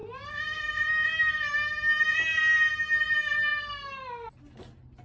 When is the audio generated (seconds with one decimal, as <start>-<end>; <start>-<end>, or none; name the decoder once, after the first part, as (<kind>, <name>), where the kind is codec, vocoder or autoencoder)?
none